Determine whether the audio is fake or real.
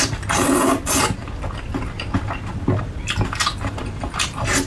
real